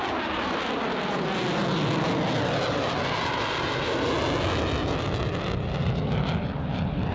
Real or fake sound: real